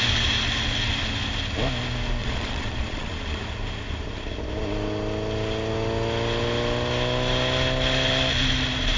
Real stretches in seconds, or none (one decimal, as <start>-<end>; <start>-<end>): 0.0-2.2; 3.4-9.0